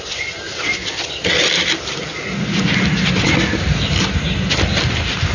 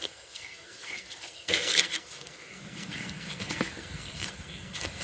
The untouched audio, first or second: first